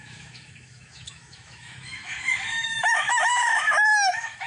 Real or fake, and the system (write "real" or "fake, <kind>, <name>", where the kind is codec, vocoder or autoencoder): fake, autoencoder, DAC-VAE